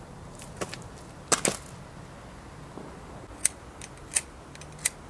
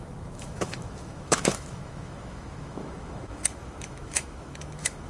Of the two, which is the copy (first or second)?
second